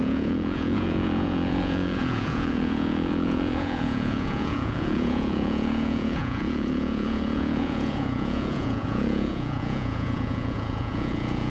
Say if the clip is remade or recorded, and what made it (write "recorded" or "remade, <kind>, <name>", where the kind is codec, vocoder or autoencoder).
remade, vocoder, Vocos